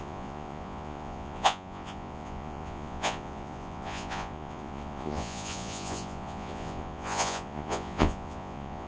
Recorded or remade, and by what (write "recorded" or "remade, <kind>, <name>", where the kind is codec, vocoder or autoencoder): remade, vocoder, Vocos